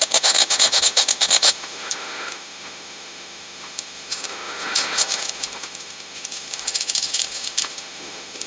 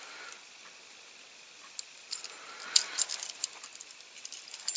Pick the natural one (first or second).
second